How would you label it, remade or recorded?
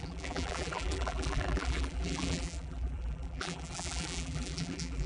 remade